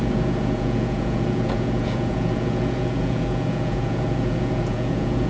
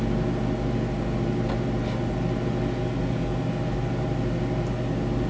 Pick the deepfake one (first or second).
first